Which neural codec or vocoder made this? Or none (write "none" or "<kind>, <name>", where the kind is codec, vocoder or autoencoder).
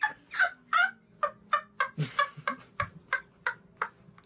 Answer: none